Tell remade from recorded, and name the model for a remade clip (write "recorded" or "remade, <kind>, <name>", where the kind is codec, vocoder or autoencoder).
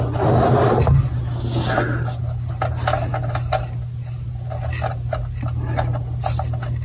recorded